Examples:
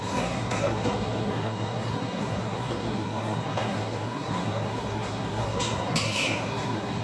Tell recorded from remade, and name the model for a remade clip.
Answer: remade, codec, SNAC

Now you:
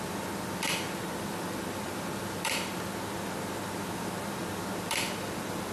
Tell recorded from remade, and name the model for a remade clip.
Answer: recorded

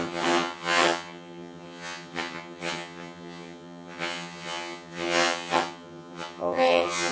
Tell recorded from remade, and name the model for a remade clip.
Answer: remade, vocoder, HiFi-GAN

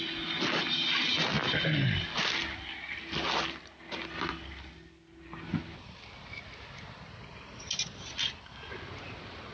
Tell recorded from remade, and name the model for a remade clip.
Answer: recorded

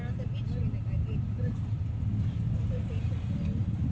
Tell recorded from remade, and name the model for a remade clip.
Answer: recorded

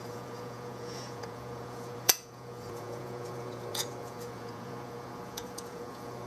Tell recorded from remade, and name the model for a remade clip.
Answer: remade, vocoder, Vocos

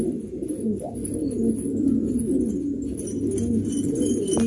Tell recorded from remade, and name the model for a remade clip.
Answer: recorded